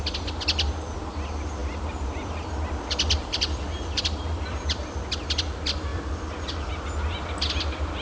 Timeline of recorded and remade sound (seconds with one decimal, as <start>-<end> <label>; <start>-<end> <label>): 0.0-1.6 recorded; 1.6-5.0 remade; 5.0-5.9 recorded; 5.9-6.7 remade; 6.7-8.0 recorded